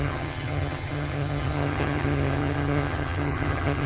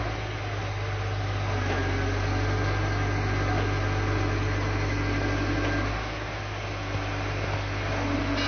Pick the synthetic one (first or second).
first